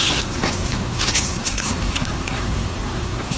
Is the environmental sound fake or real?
fake